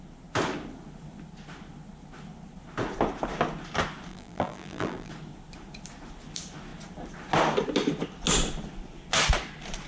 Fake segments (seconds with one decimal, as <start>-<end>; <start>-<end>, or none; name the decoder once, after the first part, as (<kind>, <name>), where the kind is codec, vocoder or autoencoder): 4.1-5.1 (vocoder, BigVGAN v2)